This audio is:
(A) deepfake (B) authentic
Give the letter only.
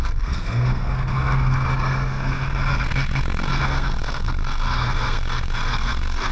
A